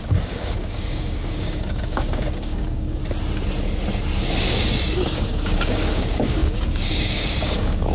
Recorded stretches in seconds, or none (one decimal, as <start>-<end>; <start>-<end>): 3.0-4.5